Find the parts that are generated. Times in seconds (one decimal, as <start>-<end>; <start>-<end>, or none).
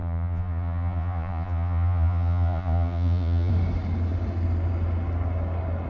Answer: 0.0-3.5